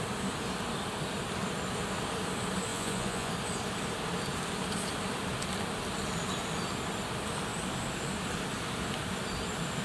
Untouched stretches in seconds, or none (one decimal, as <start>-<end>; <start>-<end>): 0.0-2.7; 3.3-9.8